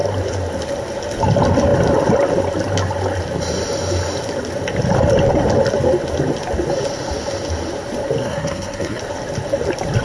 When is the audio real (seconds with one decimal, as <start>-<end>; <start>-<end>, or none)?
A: 0.0-8.2; 9.0-10.0